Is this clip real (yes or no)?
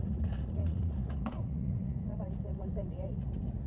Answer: no